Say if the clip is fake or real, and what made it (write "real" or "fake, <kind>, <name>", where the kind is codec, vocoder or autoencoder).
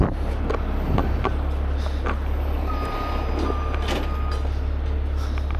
real